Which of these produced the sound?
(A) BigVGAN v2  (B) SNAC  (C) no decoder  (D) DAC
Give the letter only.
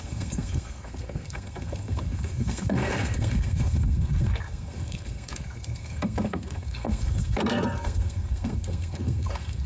B